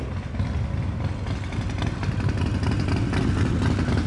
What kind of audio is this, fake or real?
real